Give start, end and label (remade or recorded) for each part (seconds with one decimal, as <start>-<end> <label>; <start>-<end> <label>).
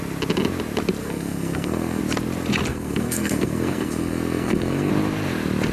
0.0-1.0 recorded; 1.0-2.0 remade; 2.0-2.7 recorded; 2.7-4.9 remade; 4.9-5.7 recorded